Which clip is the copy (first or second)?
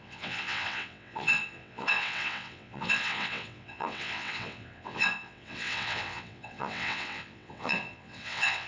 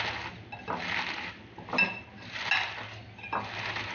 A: first